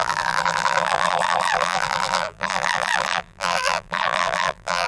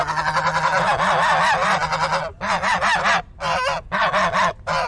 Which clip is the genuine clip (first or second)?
second